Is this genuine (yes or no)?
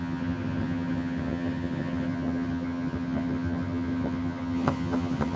no